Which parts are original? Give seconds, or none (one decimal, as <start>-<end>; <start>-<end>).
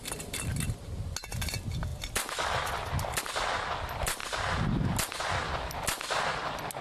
0.0-6.8